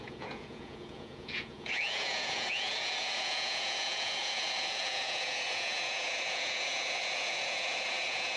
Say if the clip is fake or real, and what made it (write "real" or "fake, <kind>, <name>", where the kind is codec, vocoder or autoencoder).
fake, vocoder, Vocos